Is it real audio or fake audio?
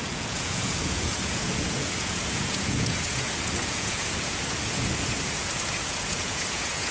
fake